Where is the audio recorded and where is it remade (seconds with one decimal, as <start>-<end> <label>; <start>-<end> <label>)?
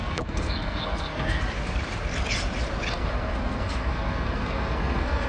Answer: 0.0-1.4 remade; 1.4-2.9 recorded; 2.9-5.3 remade